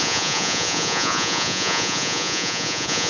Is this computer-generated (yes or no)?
yes